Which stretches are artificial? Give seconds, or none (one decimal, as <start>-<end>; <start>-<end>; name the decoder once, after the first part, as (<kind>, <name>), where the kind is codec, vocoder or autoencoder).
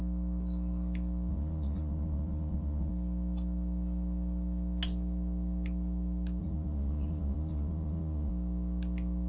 1.3-2.9 (vocoder, Vocos); 6.4-8.3